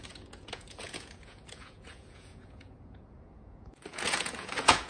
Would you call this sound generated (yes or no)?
yes